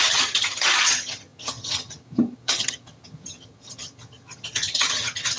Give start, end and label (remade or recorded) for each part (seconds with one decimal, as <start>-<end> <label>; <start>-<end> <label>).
0.0-5.4 remade